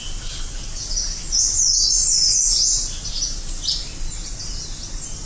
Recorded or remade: recorded